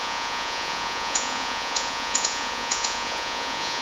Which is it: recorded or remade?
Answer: remade